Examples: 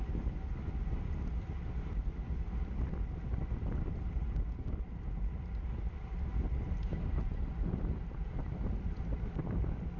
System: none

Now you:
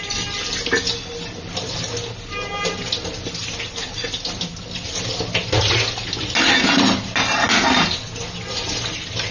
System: none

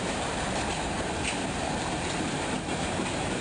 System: vocoder, BigVGAN v2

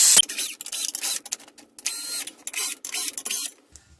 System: none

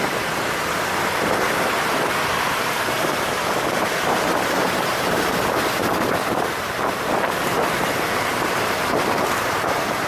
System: vocoder, BigVGAN v2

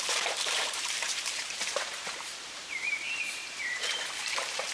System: vocoder, BigVGAN v2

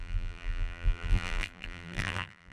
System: vocoder, BigVGAN v2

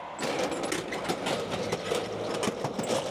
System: none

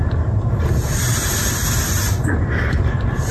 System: vocoder, BigVGAN v2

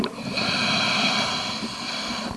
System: none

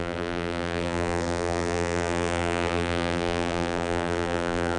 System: vocoder, BigVGAN v2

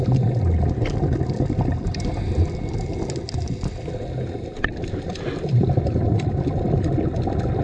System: none